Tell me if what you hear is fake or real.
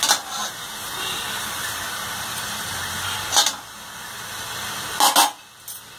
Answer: real